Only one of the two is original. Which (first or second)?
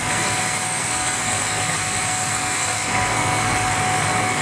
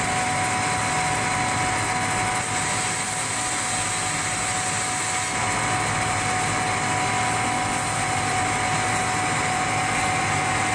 second